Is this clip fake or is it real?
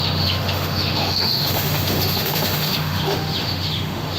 fake